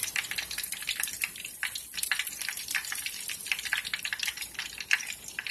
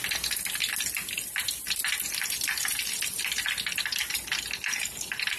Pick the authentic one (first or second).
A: second